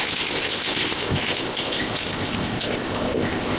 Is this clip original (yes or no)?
no